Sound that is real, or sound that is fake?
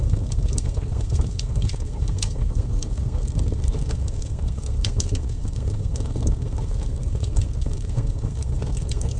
fake